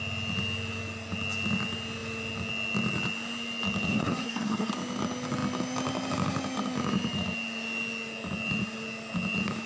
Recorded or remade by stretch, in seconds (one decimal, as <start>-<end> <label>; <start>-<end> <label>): 0.0-3.9 recorded; 3.9-4.7 remade; 4.7-9.7 recorded